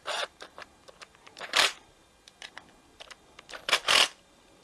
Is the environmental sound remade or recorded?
remade